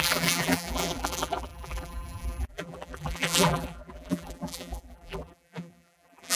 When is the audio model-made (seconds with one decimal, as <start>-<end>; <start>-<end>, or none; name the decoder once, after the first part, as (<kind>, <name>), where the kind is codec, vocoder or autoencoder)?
0.0-6.4 (vocoder, BigVGAN v2)